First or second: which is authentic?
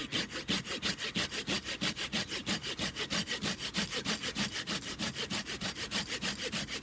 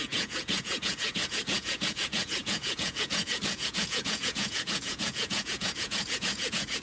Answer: first